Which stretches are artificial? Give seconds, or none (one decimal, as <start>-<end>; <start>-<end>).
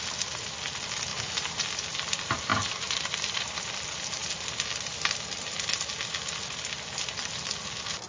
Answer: 1.1-1.6; 2.5-3.6